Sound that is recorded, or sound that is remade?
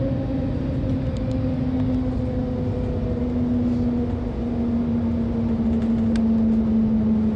recorded